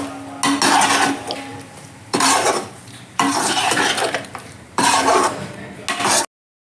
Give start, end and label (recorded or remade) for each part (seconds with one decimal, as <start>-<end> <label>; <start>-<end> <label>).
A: 0.0-1.5 recorded; 1.5-5.6 remade; 5.6-6.8 recorded